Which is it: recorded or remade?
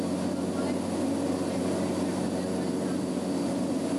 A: recorded